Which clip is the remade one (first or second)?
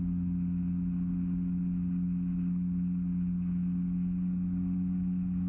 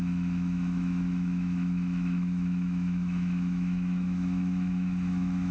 second